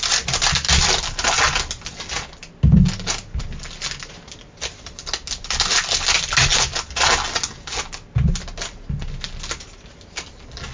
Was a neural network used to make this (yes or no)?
no